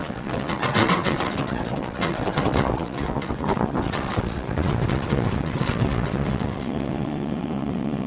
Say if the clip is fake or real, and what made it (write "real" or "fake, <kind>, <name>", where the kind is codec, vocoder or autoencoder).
fake, vocoder, WaveNeXt